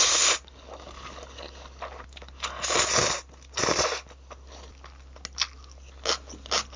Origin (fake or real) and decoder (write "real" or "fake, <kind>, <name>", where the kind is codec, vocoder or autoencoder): real